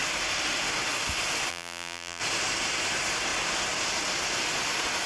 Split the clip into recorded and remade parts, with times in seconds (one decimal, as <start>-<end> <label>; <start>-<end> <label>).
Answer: 0.0-1.5 recorded; 1.5-2.2 remade; 2.2-5.1 recorded